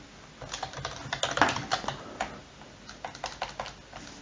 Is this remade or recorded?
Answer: recorded